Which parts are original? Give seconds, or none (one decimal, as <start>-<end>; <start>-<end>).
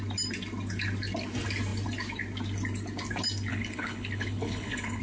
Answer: 0.0-3.5